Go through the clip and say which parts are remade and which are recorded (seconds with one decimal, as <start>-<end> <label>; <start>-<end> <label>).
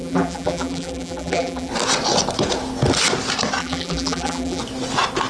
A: 0.0-1.7 remade; 1.7-3.6 recorded; 3.6-4.6 remade; 4.6-5.3 recorded